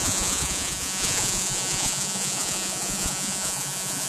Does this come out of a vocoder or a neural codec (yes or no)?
yes